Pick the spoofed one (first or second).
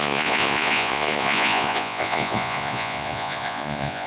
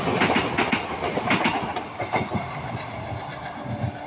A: first